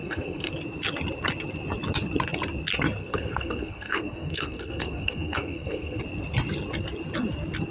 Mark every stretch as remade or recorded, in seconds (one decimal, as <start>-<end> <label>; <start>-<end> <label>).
0.0-0.5 remade; 0.5-3.0 recorded; 3.0-6.0 remade; 6.0-7.7 recorded